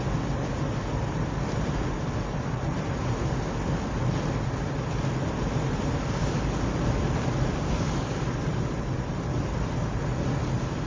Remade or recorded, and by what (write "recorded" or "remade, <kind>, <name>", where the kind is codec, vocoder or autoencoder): recorded